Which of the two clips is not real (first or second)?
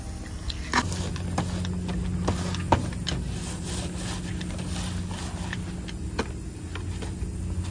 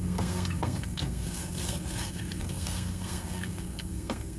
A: second